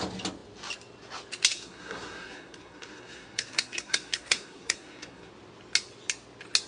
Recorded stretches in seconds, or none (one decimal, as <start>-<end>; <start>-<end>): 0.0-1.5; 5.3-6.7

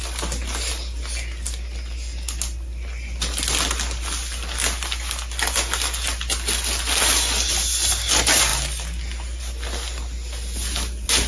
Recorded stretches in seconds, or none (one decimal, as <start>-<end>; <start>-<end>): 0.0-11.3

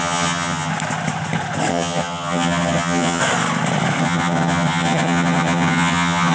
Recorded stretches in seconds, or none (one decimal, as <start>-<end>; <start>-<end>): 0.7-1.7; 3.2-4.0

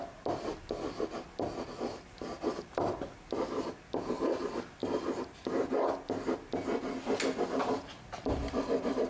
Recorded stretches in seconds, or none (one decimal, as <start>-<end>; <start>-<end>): 0.0-9.1

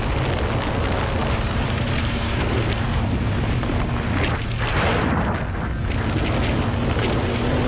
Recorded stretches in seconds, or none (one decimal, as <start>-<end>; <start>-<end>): 0.0-1.2; 3.8-7.7